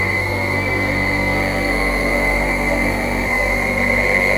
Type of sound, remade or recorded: remade